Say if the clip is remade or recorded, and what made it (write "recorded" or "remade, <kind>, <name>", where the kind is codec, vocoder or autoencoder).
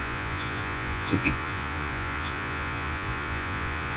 remade, vocoder, Vocos